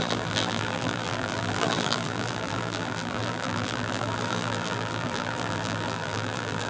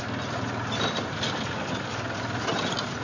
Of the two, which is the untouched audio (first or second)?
second